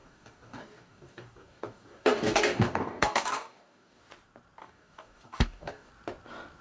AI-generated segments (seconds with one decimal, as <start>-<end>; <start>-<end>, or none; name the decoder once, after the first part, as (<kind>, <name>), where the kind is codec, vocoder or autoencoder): 0.0-4.0 (codec, DAC); 4.6-5.9